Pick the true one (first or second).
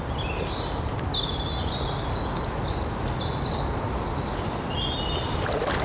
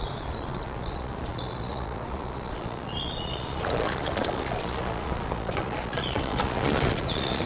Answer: first